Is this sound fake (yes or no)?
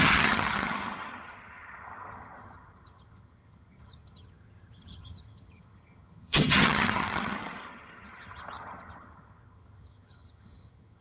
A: yes